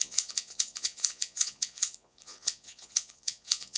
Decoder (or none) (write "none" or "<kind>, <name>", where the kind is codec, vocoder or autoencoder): vocoder, Vocos